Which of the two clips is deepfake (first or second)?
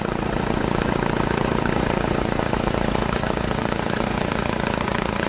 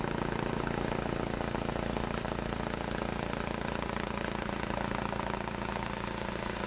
first